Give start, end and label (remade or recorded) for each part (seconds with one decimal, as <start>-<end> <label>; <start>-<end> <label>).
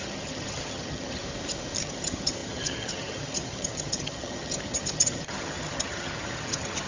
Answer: 0.0-1.2 remade; 1.2-1.8 recorded; 1.8-6.9 remade